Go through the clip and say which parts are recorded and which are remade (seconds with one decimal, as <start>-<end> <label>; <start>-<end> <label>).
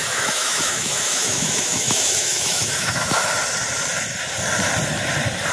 0.0-3.3 remade; 3.3-5.5 recorded